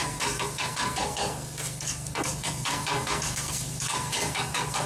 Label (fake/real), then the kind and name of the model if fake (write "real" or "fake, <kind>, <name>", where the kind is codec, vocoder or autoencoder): fake, codec, SNAC